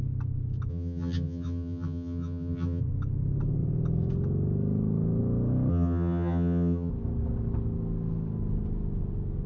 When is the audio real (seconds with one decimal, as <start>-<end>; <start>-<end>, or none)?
0.0-0.7; 2.8-5.7; 6.9-9.5